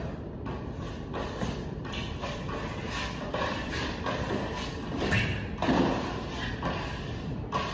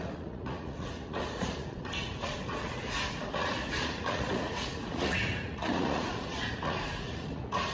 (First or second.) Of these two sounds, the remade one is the second